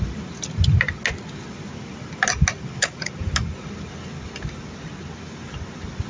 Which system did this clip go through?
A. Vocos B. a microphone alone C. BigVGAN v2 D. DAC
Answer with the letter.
B